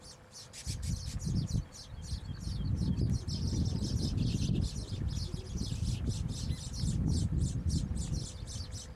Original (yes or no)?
yes